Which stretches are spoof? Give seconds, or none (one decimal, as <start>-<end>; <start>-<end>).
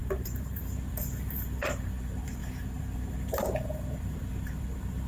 0.0-5.1